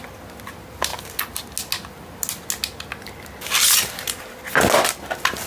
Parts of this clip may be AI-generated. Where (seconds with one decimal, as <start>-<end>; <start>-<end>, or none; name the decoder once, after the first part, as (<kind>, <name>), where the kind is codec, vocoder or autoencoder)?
none